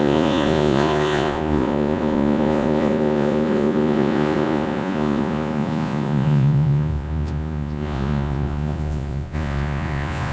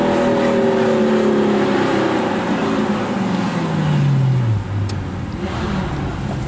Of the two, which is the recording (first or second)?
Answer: second